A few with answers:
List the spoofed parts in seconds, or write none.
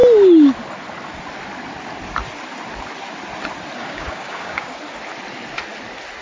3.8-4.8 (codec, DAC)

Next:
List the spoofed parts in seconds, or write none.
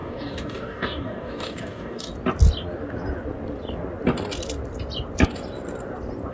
0.0-2.1 (codec, DAC)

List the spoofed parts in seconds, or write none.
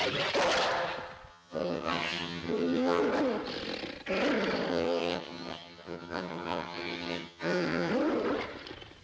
1.3-3.0 (vocoder, HiFi-GAN); 4.7-7.9